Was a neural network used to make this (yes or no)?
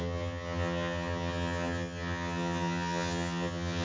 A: yes